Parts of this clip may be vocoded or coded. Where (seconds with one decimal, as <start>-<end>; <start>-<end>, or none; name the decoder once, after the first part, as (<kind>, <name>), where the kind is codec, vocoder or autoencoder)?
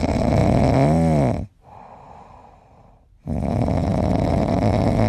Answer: 0.0-0.4 (vocoder, BigVGAN v2); 3.5-5.1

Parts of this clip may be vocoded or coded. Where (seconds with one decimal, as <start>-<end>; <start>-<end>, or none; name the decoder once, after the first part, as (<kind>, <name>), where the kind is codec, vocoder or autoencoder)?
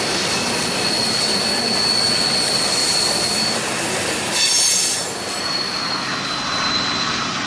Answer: 2.8-3.7 (vocoder, BigVGAN v2)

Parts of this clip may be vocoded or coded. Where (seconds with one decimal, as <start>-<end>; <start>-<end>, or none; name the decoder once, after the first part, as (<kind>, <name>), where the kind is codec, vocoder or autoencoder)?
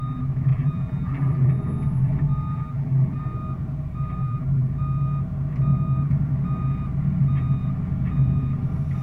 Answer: 0.5-1.5 (vocoder, BigVGAN v2); 2.5-3.2; 4.2-4.7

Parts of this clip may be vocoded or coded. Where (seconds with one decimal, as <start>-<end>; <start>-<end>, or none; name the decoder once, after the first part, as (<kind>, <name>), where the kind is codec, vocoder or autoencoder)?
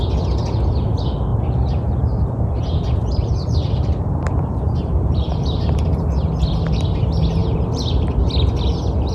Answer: 1.3-6.0 (vocoder, BigVGAN v2); 7.4-8.2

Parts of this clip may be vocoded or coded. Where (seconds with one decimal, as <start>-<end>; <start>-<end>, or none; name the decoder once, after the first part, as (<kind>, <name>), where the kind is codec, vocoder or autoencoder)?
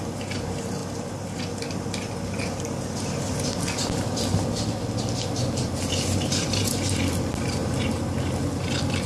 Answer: 0.0-0.8 (vocoder, BigVGAN v2); 5.0-9.1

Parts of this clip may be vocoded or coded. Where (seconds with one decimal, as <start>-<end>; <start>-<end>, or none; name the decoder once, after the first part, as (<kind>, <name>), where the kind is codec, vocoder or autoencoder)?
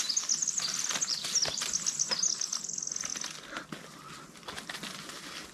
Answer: none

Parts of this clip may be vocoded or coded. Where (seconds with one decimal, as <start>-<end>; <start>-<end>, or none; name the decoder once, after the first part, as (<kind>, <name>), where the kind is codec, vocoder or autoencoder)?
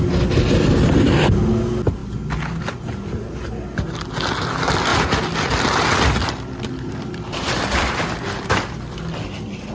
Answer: 4.9-8.0 (vocoder, BigVGAN v2)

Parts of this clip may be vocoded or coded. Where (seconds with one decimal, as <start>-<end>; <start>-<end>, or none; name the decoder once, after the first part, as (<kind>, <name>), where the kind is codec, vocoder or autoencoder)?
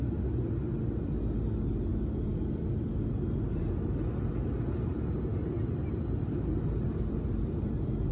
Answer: 5.3-8.1 (vocoder, BigVGAN v2)